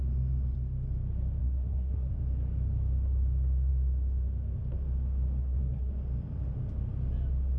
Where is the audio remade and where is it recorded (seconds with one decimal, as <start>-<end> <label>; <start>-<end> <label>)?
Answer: 0.0-1.4 recorded; 1.4-2.1 remade; 2.1-5.4 recorded; 5.4-5.9 remade; 5.9-7.6 recorded